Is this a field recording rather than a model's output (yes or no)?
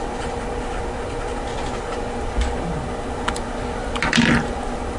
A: yes